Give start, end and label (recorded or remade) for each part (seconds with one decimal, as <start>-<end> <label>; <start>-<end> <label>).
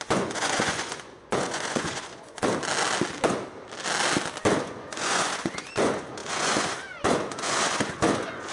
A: 0.0-2.5 remade; 2.5-4.6 recorded; 4.6-8.5 remade